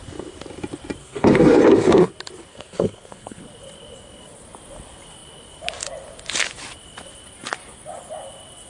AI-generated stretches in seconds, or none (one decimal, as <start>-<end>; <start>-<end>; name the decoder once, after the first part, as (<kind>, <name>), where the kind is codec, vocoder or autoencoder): 1.0-2.1 (codec, SNAC); 2.5-3.4